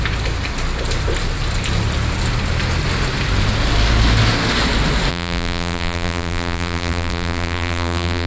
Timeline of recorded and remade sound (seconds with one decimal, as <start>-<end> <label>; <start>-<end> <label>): 0.0-5.1 recorded; 5.1-8.3 remade